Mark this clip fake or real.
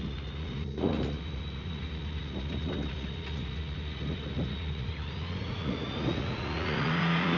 fake